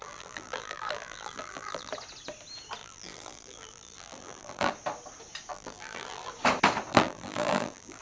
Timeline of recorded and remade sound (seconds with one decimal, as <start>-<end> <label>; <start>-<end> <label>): 0.0-1.9 remade; 1.9-2.8 recorded; 2.8-4.7 remade; 4.7-5.5 recorded; 5.5-6.3 remade; 6.3-6.9 recorded; 6.9-8.0 remade

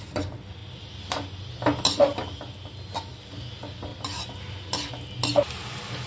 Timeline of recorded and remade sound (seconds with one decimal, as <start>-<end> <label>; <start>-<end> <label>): 0.0-6.1 recorded

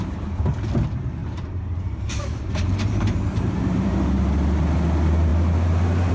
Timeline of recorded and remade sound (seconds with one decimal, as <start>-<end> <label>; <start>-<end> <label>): 0.0-1.2 recorded; 1.2-3.9 remade; 3.9-6.1 recorded

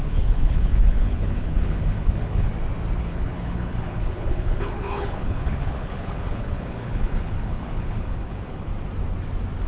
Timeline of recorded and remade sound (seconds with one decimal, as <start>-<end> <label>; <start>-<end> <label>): 0.0-2.5 remade; 2.5-3.0 recorded; 3.0-8.7 remade; 8.7-9.7 recorded

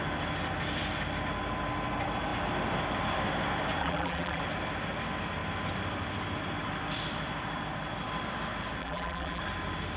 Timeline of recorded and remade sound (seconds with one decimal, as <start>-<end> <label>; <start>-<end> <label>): 0.0-3.8 recorded; 3.8-4.4 remade; 4.4-8.8 recorded; 8.8-9.4 remade; 9.4-10.0 recorded

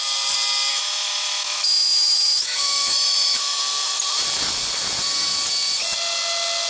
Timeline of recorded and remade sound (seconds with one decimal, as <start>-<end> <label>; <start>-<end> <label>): 0.0-0.7 recorded; 0.7-3.6 remade; 3.6-6.7 recorded

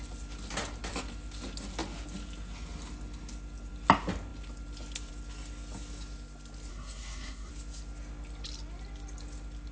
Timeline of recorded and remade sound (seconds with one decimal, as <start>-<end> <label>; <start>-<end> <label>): 0.0-6.7 recorded; 6.7-7.5 remade; 7.5-9.7 recorded

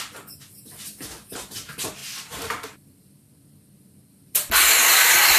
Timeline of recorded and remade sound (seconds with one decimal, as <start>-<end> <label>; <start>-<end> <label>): 0.0-2.0 recorded; 2.0-3.1 remade; 3.1-4.1 recorded; 4.1-5.4 remade